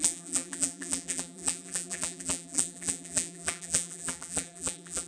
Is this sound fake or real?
fake